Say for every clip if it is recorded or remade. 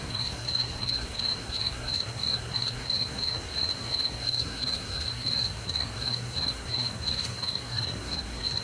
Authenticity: remade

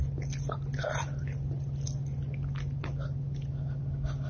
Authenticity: recorded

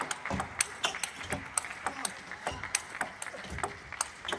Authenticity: recorded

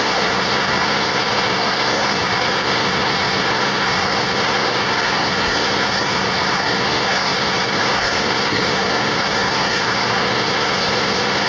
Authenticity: remade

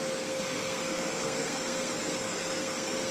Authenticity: remade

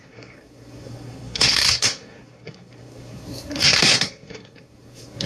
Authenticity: remade